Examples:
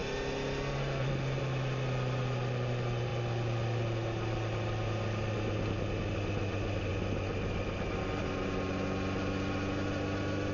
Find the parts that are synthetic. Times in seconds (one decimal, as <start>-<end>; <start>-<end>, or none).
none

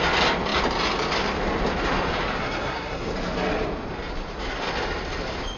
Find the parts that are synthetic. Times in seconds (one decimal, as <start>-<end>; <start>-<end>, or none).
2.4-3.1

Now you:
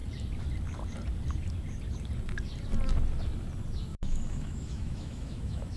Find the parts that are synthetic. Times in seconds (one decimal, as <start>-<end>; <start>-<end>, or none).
3.9-5.8

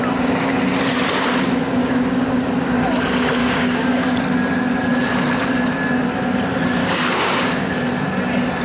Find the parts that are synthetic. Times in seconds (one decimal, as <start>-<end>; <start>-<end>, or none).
1.8-2.4; 3.4-4.1; 6.8-7.7

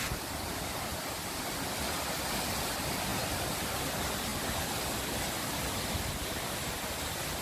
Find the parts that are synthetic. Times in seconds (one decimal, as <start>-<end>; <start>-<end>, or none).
none

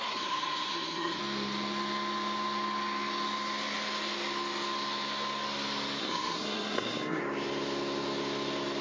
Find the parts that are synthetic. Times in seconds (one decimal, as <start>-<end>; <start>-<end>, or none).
0.0-1.2; 6.0-7.2

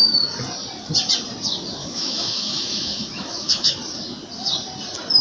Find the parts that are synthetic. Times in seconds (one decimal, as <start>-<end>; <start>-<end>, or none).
1.8-3.8

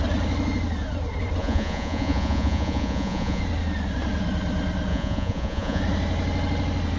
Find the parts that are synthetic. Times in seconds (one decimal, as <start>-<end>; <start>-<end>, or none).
1.4-3.4; 4.9-5.8